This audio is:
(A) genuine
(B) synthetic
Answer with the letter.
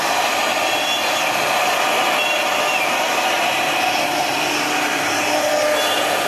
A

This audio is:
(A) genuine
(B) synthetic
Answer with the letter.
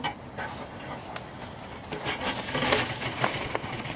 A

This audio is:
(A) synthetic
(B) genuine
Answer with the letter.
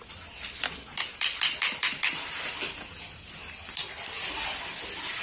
A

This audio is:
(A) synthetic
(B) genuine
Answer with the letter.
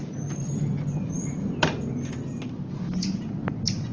B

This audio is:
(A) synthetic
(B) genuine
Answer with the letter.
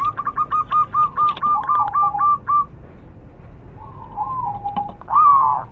B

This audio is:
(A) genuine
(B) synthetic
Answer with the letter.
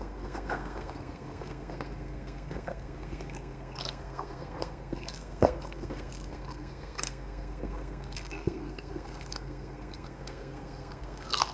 B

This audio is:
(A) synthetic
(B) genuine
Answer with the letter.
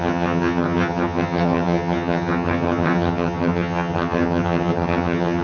A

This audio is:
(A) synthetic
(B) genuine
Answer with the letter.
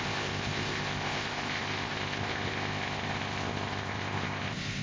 A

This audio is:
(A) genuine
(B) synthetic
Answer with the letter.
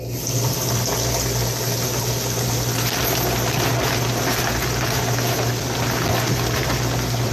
A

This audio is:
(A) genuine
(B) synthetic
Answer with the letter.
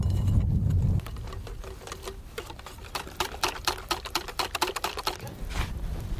A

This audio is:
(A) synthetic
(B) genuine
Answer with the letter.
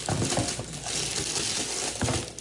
B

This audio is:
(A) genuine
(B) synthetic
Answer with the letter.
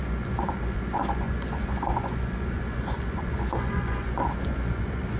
B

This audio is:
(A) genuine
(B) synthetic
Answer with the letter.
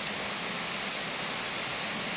A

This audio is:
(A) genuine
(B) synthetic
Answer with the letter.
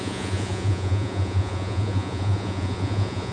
B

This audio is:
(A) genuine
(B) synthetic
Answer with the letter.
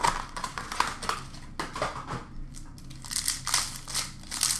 A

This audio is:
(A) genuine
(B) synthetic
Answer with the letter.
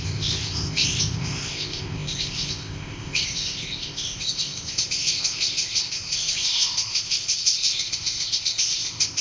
B